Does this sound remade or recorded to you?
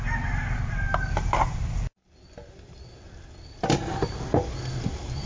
recorded